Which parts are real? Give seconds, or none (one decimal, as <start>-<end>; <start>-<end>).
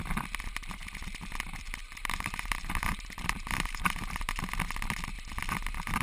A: 0.0-1.8; 4.3-6.0